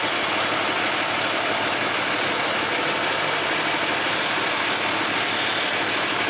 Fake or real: real